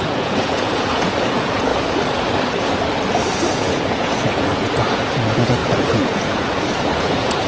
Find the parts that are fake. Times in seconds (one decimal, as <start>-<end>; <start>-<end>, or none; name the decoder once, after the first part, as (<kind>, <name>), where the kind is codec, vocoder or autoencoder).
0.0-1.7 (vocoder, Vocos); 3.5-7.5